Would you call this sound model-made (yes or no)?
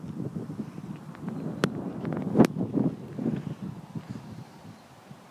no